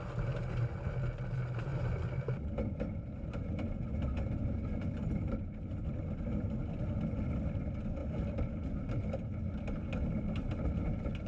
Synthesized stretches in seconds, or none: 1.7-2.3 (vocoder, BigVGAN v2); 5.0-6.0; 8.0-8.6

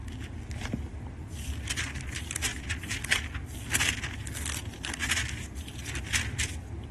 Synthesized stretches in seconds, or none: none

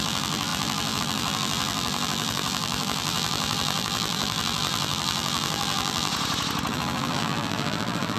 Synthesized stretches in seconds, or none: 0.0-6.1 (vocoder, BigVGAN v2); 6.7-8.2

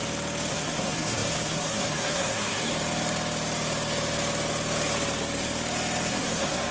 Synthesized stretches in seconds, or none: 0.5-2.7 (codec, SNAC); 6.1-6.7

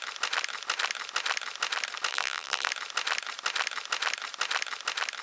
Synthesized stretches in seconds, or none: 2.1-2.7 (vocoder, BigVGAN v2)

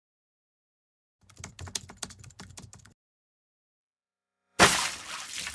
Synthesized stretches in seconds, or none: 3.8-4.6 (codec, SNAC)